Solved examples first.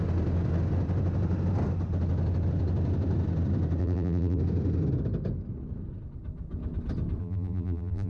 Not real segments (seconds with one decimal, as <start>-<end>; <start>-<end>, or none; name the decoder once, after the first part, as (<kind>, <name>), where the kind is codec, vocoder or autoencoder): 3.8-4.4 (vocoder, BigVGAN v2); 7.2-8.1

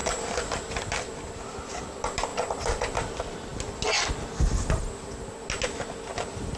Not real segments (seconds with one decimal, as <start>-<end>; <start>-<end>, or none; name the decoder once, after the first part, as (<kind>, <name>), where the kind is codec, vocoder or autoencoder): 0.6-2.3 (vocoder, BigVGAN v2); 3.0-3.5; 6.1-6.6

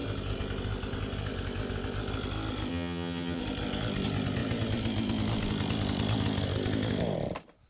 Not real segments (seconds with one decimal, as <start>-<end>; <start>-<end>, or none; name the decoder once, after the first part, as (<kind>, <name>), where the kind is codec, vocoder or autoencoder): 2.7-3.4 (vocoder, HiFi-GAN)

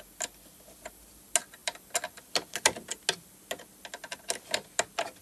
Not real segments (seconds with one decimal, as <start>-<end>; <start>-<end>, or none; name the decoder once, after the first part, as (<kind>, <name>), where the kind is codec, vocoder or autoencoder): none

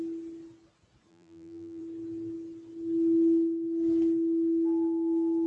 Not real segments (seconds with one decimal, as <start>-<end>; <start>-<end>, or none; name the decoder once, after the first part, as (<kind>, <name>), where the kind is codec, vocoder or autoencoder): 1.1-1.8 (vocoder, BigVGAN v2)